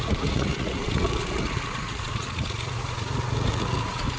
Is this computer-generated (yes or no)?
yes